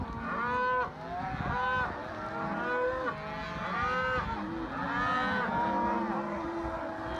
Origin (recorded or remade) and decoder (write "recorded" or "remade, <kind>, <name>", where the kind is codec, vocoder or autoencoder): recorded